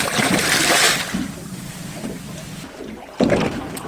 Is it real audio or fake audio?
real